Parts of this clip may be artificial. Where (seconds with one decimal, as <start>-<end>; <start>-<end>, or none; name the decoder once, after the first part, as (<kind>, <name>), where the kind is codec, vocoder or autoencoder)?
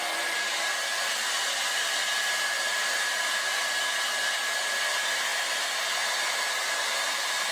0.0-0.5 (vocoder, BigVGAN v2)